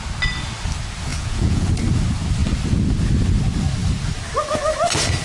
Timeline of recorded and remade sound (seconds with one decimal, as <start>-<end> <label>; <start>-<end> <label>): 0.0-1.1 recorded; 1.1-1.7 remade; 1.7-5.2 recorded